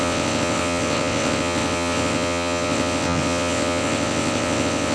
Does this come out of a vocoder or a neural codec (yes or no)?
yes